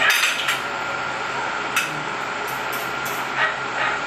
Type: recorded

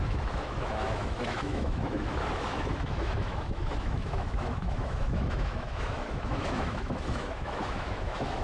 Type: remade